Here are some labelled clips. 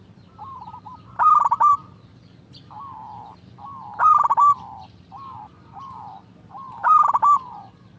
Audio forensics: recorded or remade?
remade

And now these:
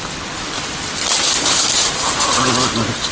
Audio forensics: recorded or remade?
recorded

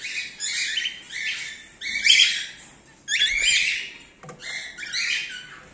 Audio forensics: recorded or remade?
recorded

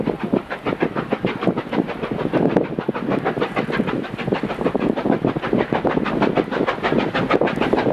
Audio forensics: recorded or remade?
recorded